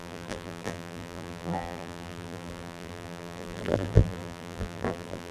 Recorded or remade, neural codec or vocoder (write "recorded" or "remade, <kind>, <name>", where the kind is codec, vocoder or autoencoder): remade, vocoder, BigVGAN v2